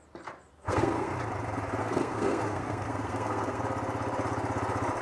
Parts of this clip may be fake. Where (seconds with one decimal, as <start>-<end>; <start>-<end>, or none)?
0.5-1.1; 1.8-3.6